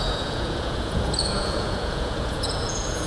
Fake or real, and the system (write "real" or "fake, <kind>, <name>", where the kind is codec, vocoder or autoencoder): fake, vocoder, Vocos